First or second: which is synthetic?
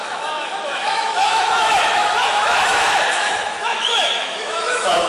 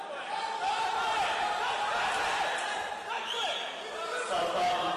first